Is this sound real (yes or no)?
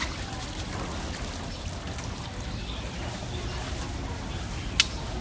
yes